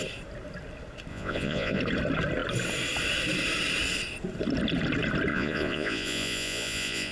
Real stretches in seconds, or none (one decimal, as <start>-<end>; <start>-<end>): 0.0-1.1; 1.8-5.3